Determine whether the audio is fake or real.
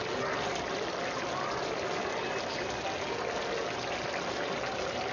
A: real